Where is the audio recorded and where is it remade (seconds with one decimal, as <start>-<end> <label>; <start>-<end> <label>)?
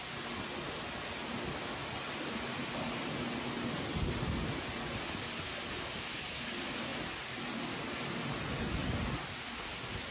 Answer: 0.0-10.1 recorded